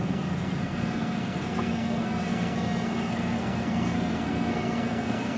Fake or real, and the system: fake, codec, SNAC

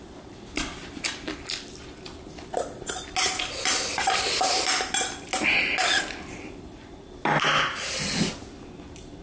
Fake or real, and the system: real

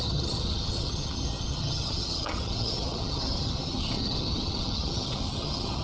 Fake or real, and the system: fake, vocoder, HiFi-GAN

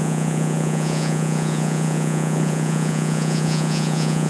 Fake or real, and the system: fake, vocoder, Vocos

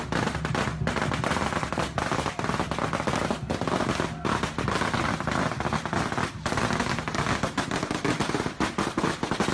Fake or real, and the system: real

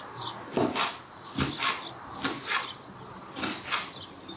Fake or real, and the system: real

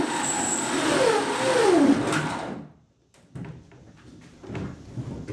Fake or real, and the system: real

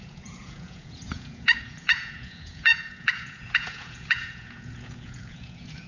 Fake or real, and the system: fake, vocoder, Vocos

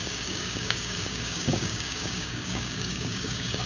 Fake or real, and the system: fake, codec, DAC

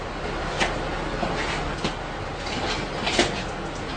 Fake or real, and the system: real